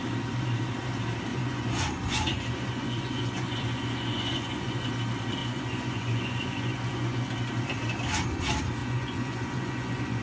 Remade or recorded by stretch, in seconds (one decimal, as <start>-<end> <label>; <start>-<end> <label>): 0.0-1.3 recorded; 1.3-4.9 remade; 4.9-5.4 recorded; 5.4-7.3 remade; 7.3-8.8 recorded; 8.8-10.2 remade